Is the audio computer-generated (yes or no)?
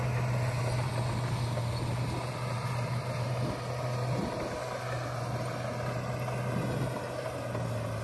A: no